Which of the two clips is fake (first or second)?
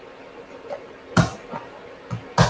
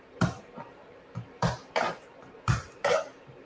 second